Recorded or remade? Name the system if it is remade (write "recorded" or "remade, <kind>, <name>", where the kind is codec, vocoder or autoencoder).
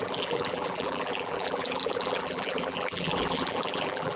remade, vocoder, BigVGAN v2